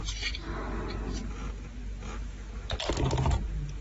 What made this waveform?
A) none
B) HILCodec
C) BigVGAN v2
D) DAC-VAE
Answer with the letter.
A